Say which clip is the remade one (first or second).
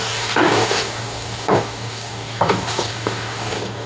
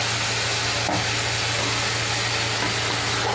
first